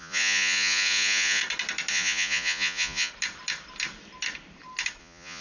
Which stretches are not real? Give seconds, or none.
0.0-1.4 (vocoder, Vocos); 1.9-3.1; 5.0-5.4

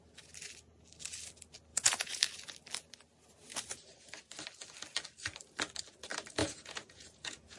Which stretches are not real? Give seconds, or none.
1.7-2.2 (vocoder, Vocos); 6.4-7.6

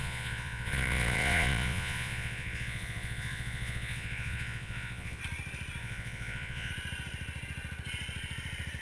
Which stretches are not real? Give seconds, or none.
0.0-5.2 (vocoder, Vocos); 5.8-6.7

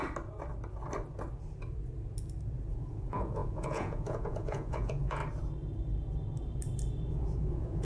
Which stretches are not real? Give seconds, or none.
2.7-5.2 (vocoder, Vocos); 7.1-7.8

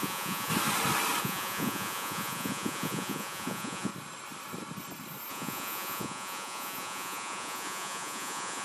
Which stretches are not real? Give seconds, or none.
0.0-0.5 (vocoder, Vocos); 1.2-3.9; 5.3-8.6